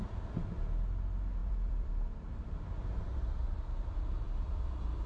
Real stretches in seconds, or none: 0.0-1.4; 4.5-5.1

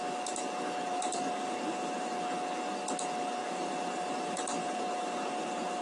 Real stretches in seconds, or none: 0.0-1.0; 2.1-3.4

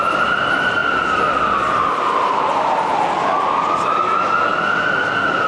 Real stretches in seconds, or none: 0.0-5.5

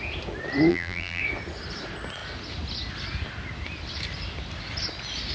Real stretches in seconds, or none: 0.0-0.7; 1.2-5.3

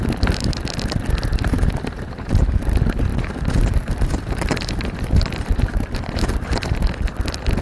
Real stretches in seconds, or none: 0.0-1.3; 2.3-3.1; 6.8-7.6

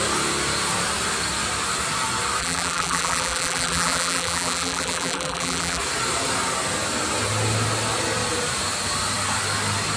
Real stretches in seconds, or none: 0.0-2.4; 5.8-10.0